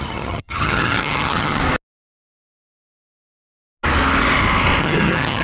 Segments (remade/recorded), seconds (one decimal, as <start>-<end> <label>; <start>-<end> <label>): 0.0-1.6 remade; 1.6-4.8 recorded; 4.8-5.4 remade